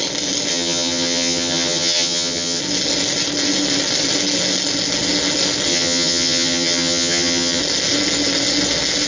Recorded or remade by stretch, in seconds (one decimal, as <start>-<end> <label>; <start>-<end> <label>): 0.0-0.5 recorded; 0.5-2.6 remade; 2.6-5.7 recorded; 5.7-7.6 remade; 7.6-9.1 recorded